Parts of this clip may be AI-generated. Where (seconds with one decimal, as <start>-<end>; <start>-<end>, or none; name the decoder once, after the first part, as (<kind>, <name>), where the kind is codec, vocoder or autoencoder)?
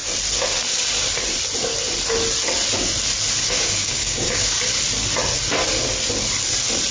3.4-4.6 (codec, DAC)